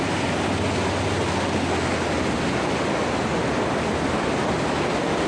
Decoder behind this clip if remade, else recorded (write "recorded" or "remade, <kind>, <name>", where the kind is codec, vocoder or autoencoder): recorded